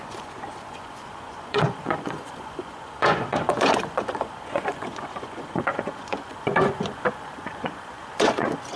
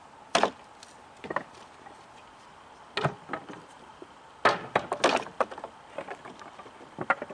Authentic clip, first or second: second